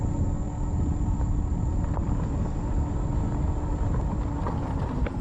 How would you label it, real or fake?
real